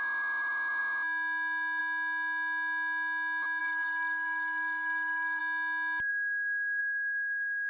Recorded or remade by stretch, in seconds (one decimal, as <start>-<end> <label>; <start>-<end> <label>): 0.0-3.6 recorded; 3.6-5.4 remade; 5.4-7.7 recorded